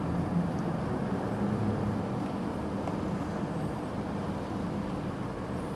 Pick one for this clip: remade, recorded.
recorded